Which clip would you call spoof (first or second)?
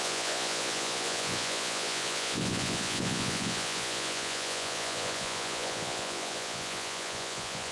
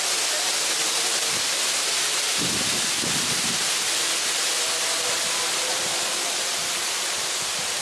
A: first